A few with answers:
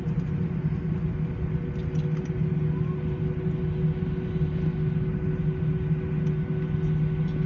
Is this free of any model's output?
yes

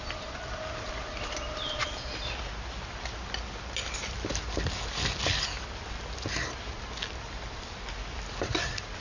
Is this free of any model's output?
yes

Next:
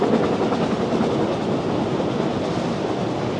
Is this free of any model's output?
yes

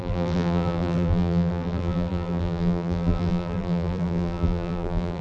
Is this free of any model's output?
no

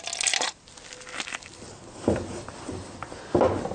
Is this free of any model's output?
yes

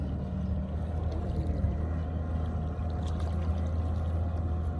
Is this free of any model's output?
yes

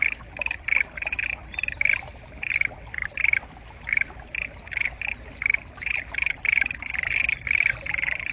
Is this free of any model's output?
yes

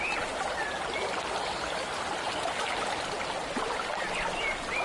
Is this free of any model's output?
yes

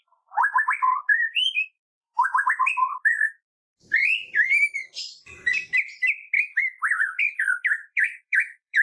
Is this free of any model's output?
no